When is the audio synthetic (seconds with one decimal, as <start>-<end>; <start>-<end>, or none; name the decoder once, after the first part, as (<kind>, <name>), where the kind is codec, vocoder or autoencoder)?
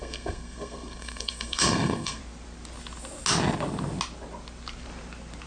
0.0-2.2 (codec, SNAC)